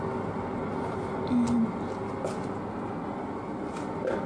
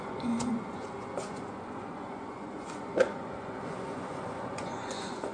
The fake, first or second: second